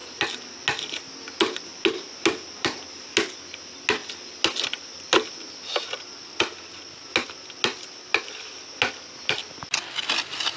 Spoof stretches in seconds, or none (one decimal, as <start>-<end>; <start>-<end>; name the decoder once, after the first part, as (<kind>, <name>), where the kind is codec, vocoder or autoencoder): none